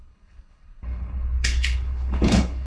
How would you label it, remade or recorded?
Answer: remade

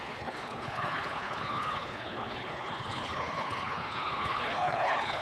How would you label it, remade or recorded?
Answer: remade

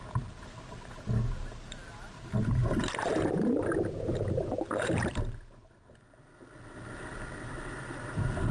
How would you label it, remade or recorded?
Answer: recorded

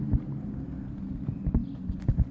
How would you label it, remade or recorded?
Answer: recorded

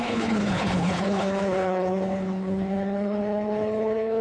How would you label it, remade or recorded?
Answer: remade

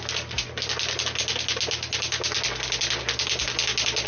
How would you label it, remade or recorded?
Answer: recorded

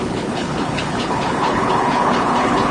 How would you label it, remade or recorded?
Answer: remade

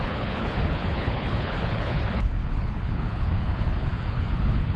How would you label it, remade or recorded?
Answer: remade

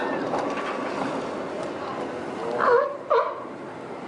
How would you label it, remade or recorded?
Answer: recorded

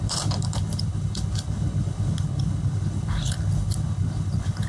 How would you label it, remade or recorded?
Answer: remade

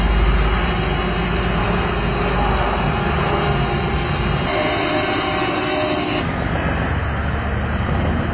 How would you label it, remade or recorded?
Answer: recorded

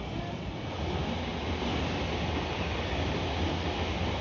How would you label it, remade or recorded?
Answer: recorded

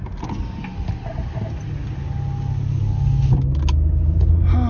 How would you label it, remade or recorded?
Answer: recorded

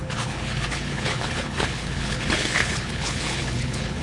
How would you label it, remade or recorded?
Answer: remade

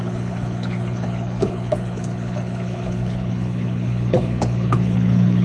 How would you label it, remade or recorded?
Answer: remade